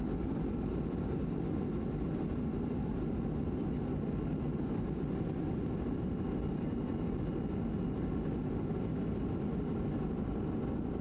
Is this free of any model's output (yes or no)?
yes